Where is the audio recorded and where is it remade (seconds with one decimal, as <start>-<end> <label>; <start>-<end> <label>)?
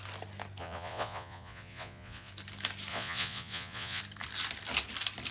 0.0-0.6 recorded; 0.6-2.3 remade; 2.3-2.9 recorded; 2.9-4.0 remade; 4.0-5.3 recorded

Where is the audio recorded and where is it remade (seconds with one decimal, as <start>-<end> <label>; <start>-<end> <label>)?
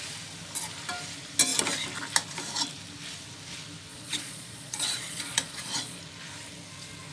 0.0-3.9 recorded; 3.9-6.0 remade; 6.0-7.1 recorded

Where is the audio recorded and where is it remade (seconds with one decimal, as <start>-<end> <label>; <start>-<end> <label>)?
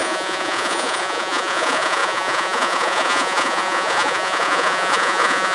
0.0-5.5 remade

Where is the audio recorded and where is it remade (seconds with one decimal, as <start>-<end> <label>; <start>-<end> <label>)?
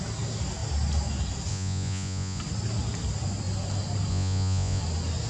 0.0-1.5 recorded; 1.5-2.4 remade; 2.4-4.1 recorded; 4.1-4.8 remade; 4.8-5.3 recorded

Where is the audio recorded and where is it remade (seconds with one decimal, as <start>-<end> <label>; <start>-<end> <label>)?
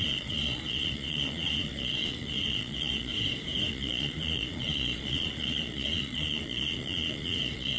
0.0-3.1 remade; 3.1-3.7 recorded; 3.7-7.8 remade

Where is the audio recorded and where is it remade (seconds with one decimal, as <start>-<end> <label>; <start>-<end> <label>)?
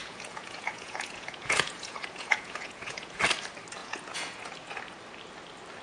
0.0-3.2 remade; 3.2-3.8 recorded; 3.8-4.5 remade; 4.5-5.8 recorded